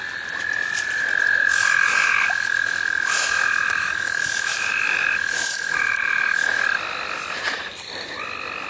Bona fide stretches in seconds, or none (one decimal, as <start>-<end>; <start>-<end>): 0.0-1.4; 6.6-8.7